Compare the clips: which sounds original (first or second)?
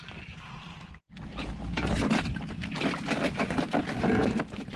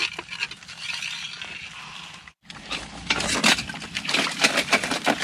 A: second